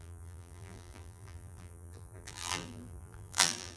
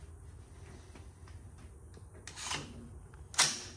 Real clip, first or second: second